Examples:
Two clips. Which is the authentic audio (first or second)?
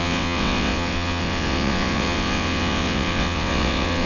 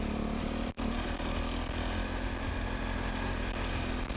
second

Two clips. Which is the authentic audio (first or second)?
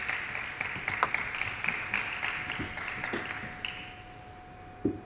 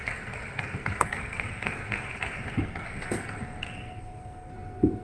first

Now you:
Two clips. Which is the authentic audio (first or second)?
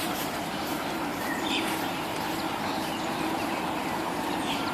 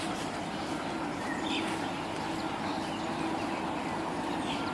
second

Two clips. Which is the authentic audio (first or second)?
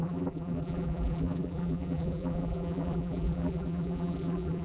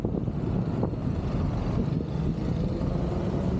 second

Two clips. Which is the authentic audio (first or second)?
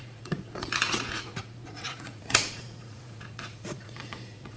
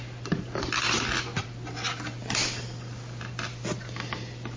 second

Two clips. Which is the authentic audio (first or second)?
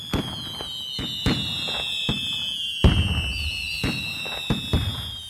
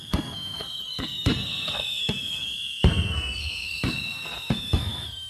first